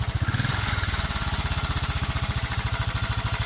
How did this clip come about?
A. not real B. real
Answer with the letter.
B